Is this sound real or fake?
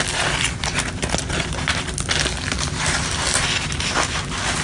real